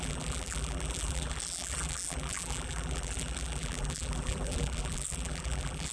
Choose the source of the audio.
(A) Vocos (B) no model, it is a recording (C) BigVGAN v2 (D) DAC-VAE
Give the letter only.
C